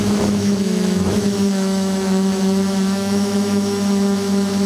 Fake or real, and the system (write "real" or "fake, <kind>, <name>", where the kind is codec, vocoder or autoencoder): fake, autoencoder, DAC-VAE